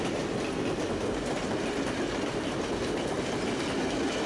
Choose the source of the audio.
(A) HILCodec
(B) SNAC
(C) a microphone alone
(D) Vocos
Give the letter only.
C